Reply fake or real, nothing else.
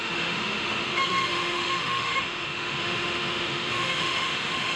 fake